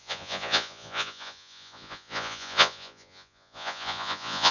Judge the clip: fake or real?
fake